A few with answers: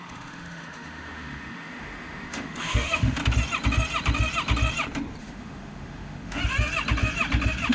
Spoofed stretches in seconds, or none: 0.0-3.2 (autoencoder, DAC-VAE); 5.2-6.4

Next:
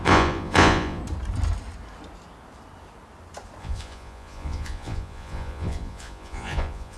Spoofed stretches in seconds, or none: 0.0-1.0 (vocoder, Vocos); 3.6-7.0

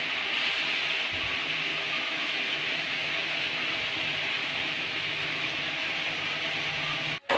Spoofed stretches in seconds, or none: 1.7-3.6 (autoencoder, DAC-VAE); 4.4-5.4

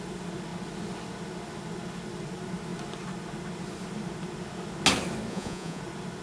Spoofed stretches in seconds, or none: 5.3-5.8 (vocoder, Vocos)

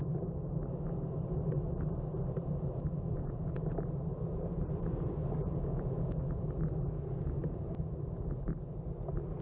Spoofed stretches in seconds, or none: 2.9-3.6 (vocoder, Vocos); 5.7-6.4